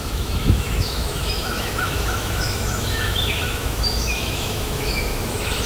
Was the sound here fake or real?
fake